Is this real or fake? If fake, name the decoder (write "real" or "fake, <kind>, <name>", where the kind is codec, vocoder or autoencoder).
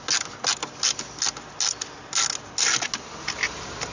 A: real